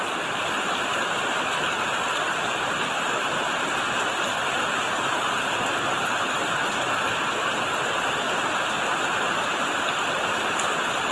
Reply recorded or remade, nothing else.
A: recorded